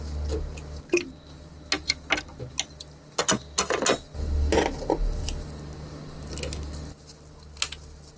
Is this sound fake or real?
real